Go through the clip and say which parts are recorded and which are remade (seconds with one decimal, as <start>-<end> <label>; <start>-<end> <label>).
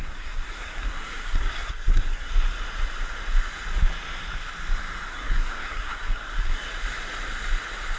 0.0-2.3 remade; 2.3-5.1 recorded; 5.1-6.7 remade; 6.7-8.0 recorded